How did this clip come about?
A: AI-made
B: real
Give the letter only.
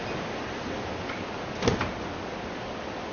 B